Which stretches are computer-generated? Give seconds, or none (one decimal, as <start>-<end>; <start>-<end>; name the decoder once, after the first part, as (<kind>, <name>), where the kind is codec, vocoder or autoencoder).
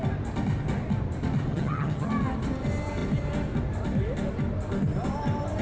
1.5-2.1 (vocoder, HiFi-GAN)